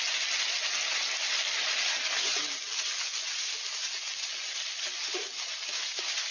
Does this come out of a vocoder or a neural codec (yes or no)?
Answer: no